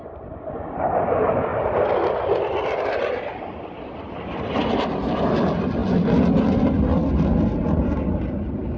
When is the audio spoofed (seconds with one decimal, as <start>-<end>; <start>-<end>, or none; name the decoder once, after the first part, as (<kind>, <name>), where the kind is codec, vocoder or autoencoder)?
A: 1.5-5.3 (vocoder, BigVGAN v2)